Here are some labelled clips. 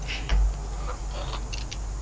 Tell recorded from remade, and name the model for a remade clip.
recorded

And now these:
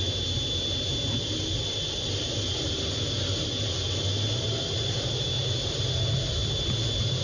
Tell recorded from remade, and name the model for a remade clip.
recorded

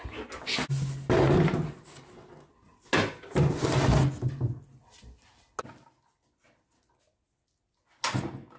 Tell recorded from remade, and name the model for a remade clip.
recorded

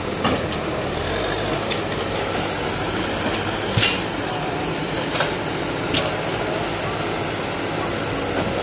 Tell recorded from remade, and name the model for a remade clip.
recorded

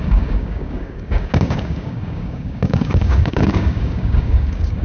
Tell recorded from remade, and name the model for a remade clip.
remade, codec, DAC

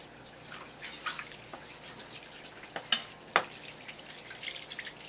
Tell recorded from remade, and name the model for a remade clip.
recorded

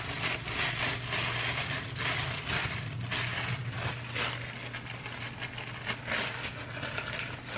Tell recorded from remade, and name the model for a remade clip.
recorded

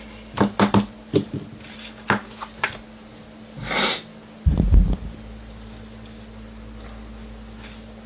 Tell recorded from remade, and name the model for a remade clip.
recorded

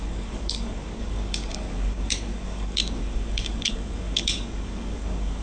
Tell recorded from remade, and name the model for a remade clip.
remade, codec, DAC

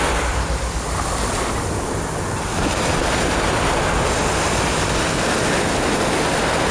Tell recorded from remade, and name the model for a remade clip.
recorded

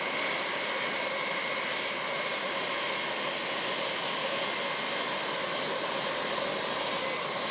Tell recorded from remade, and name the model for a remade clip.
recorded